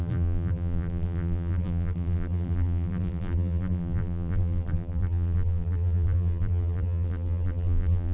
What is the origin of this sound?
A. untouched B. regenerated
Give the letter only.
B